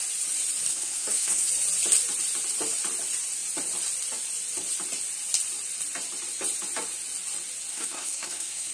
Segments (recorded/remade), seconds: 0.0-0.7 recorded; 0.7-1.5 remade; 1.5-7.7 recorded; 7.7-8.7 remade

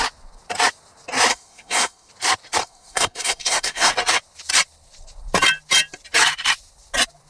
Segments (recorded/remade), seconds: 0.0-1.3 recorded; 1.3-2.1 remade; 2.1-2.6 recorded; 2.6-3.9 remade; 3.9-7.3 recorded

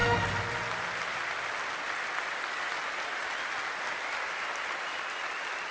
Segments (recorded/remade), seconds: 0.0-5.7 recorded

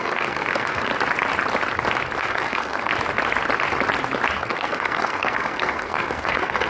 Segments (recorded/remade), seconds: 0.0-0.9 remade; 0.9-2.2 recorded; 2.2-2.9 remade; 2.9-4.4 recorded; 4.4-6.7 remade

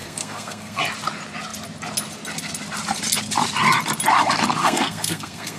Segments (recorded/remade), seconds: 0.0-0.8 remade; 0.8-4.6 recorded; 4.6-5.6 remade

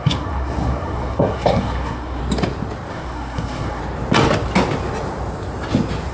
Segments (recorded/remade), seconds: 0.0-2.2 remade; 2.2-2.9 recorded; 2.9-3.8 remade; 3.8-6.1 recorded